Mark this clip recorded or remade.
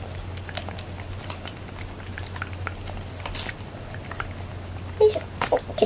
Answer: recorded